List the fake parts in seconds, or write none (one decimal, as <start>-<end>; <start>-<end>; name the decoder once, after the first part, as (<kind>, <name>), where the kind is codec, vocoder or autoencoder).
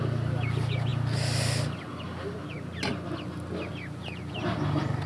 none